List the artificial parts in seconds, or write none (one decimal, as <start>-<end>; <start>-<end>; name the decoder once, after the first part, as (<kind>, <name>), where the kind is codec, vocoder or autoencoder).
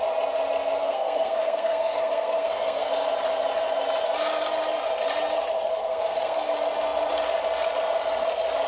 0.8-2.9 (codec, SNAC); 5.7-6.5